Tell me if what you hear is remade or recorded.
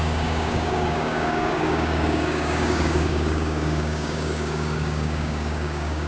remade